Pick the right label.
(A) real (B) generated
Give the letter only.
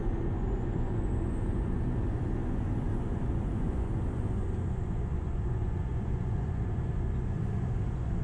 B